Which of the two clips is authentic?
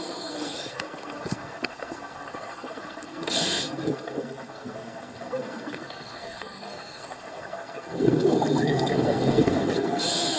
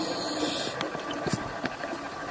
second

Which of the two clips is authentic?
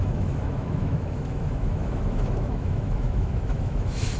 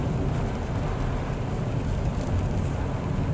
second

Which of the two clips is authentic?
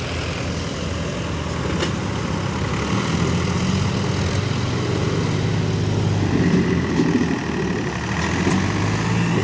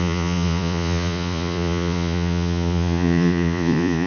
first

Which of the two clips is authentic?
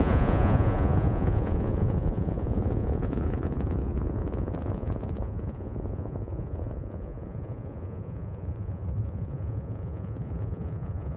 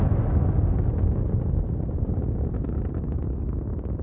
second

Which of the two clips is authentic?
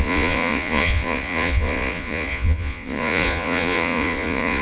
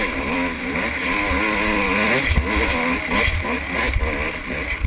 second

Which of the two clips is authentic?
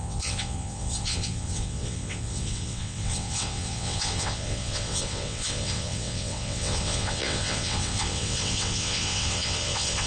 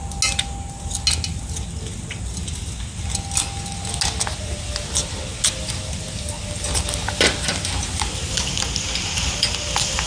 second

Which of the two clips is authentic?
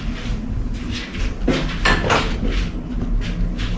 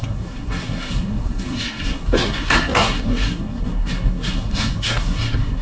first